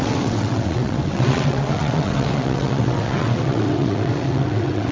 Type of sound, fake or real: fake